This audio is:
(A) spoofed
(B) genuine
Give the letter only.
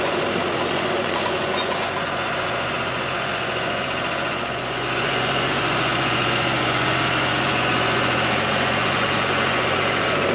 A